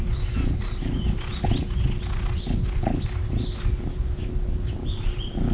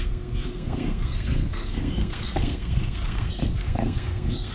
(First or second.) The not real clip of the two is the second